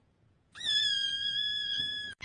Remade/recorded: remade